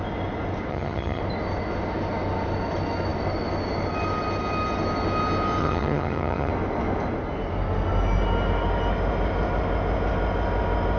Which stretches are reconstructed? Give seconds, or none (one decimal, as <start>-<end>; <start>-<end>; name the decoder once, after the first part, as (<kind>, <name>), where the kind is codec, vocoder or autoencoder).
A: 0.7-1.2 (vocoder, HiFi-GAN); 5.6-6.5